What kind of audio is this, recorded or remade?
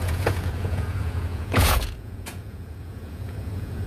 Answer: remade